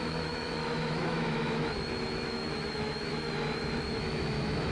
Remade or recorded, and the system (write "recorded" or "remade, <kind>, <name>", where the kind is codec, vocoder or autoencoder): remade, autoencoder, DAC-VAE